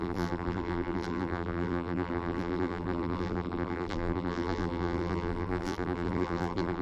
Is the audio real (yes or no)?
no